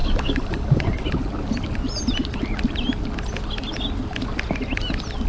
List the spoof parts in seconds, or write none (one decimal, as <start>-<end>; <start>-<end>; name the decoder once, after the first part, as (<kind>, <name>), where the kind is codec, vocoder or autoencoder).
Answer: 0.0-1.0 (codec, DAC)